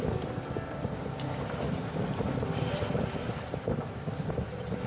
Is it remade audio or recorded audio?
remade